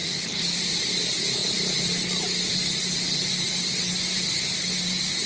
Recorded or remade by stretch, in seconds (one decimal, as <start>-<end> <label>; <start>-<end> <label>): 0.0-5.3 recorded